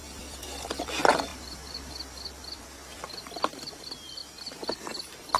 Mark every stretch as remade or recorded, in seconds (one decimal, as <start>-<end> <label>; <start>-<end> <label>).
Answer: 0.0-1.3 recorded; 1.3-1.9 remade; 1.9-5.4 recorded